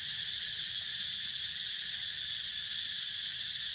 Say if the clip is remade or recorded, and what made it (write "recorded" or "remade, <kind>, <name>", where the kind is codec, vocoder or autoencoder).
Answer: recorded